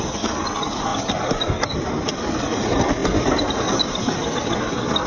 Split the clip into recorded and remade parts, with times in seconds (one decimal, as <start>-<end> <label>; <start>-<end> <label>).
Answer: 0.0-5.1 recorded